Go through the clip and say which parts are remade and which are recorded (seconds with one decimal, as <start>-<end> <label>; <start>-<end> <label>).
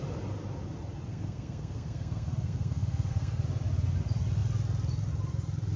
0.0-1.1 recorded; 1.1-3.4 remade; 3.4-5.8 recorded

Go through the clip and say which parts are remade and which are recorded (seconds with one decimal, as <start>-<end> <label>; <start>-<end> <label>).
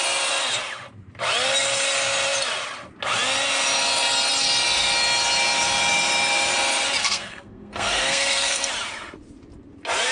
0.0-7.0 recorded; 7.0-8.7 remade; 8.7-10.1 recorded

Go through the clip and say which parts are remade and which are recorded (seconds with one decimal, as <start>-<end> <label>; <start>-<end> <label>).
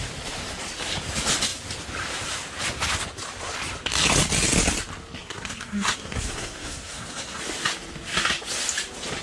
0.0-5.2 recorded; 5.2-7.4 remade; 7.4-9.2 recorded